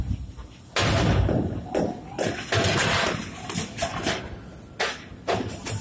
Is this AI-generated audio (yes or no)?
no